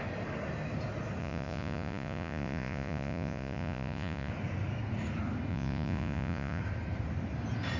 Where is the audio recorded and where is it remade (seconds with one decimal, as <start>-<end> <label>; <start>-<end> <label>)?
0.0-1.2 recorded; 1.2-4.3 remade; 4.3-5.5 recorded; 5.5-6.6 remade; 6.6-7.8 recorded